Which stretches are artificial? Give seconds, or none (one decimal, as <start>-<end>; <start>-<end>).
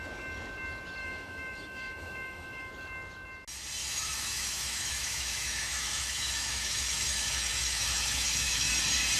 1.0-2.7; 3.8-8.7